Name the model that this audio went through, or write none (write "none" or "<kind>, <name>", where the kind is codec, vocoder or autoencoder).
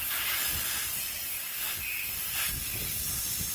none